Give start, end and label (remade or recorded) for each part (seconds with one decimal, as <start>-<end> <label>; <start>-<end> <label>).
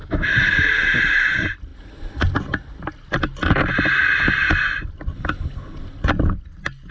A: 0.0-0.7 remade; 0.7-6.9 recorded